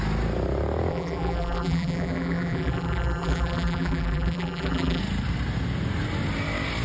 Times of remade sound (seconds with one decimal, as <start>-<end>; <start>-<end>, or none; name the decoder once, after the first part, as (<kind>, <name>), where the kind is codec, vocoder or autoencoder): 0.9-5.0 (vocoder, BigVGAN v2)